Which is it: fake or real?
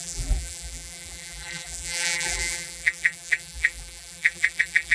fake